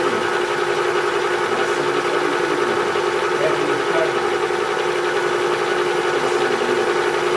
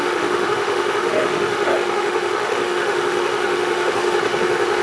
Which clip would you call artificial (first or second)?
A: second